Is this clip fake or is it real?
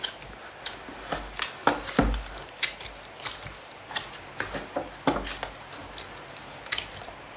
real